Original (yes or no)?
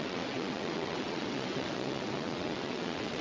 no